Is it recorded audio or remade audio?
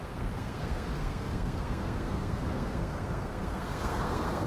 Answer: remade